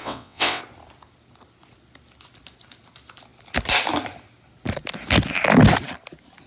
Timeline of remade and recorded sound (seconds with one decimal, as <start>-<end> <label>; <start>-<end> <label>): 0.0-0.6 remade; 0.6-6.5 recorded

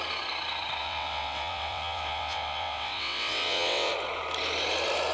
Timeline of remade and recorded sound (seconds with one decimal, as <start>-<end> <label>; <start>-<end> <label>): 0.0-0.8 recorded; 0.8-3.9 remade; 3.9-5.1 recorded

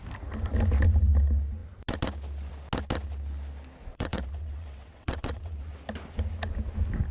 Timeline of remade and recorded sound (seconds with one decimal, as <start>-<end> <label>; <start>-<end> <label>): 0.0-3.9 recorded; 3.9-5.7 remade; 5.7-7.1 recorded